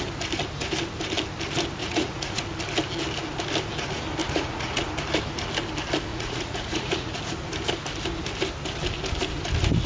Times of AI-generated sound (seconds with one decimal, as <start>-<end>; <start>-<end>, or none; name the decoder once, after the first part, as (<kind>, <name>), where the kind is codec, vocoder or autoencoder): 1.8-2.4 (vocoder, Vocos); 4.2-4.9; 6.1-7.2